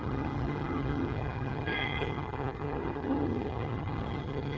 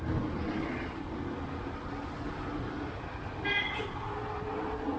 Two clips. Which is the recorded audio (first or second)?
second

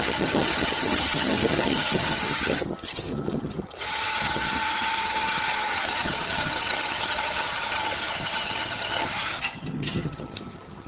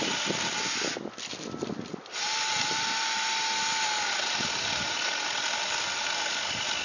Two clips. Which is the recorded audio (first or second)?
second